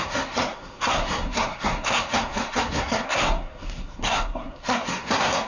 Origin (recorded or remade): remade